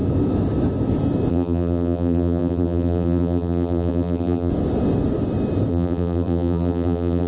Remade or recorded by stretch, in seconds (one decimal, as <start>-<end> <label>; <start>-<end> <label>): 0.0-1.3 recorded; 1.3-4.5 remade; 4.5-5.7 recorded; 5.7-7.3 remade